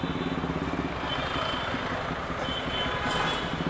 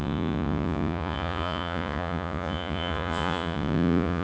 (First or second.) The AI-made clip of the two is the second